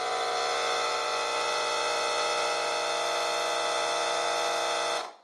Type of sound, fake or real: fake